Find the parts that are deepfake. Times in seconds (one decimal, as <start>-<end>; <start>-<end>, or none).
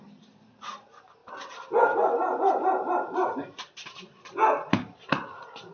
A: none